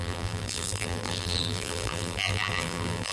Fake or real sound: fake